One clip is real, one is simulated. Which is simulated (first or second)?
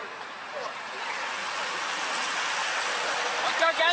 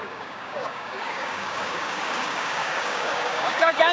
second